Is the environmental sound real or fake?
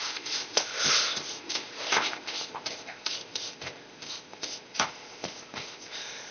fake